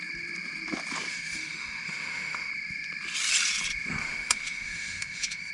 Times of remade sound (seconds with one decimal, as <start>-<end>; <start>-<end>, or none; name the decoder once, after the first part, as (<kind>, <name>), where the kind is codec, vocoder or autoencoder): 1.1-2.5 (autoencoder, DAC-VAE); 4.0-5.5